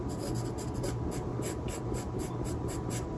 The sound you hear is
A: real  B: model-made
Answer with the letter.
A